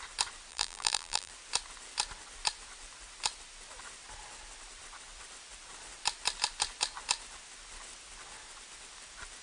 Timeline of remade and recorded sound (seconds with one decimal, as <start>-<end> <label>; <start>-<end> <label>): 0.0-0.5 recorded; 0.5-1.3 remade; 1.3-9.4 recorded